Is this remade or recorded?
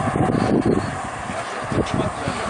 recorded